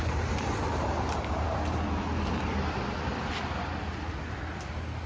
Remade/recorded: recorded